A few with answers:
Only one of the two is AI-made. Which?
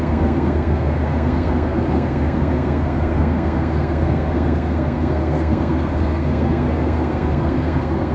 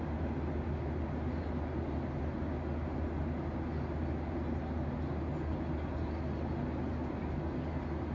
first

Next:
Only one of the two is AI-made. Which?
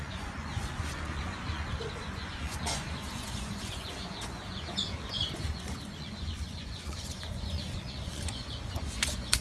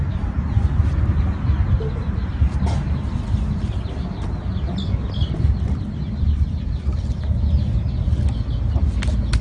first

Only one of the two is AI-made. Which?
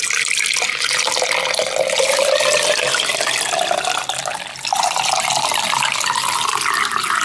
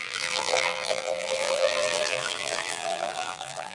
second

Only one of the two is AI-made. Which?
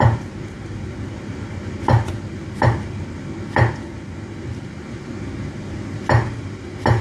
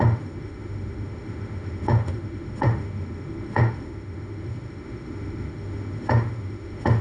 second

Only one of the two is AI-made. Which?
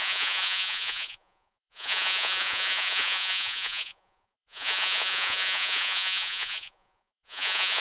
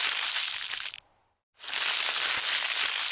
first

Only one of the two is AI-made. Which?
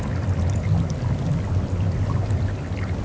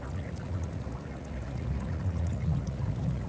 second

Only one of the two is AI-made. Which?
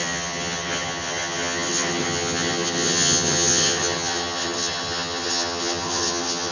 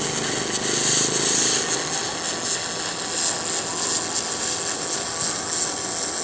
first